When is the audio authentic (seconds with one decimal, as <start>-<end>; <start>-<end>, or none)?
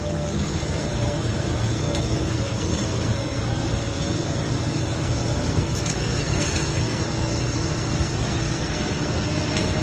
none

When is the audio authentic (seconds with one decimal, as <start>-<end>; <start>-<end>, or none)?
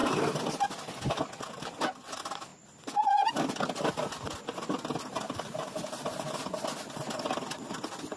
0.0-8.2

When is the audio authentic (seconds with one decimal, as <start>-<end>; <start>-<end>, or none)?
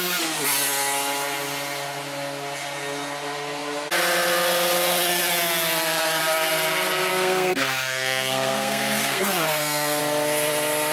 0.0-7.1; 10.0-10.9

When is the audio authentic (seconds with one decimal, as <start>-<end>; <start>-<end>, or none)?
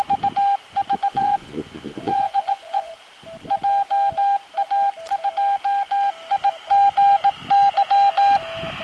0.0-1.1; 2.9-8.8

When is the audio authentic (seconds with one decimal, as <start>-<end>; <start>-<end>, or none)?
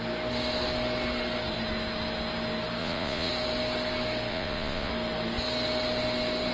0.0-2.8; 3.3-4.3; 4.9-6.5